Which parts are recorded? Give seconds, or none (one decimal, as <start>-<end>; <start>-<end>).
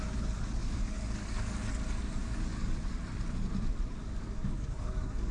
0.0-0.6; 1.6-2.2; 3.0-4.0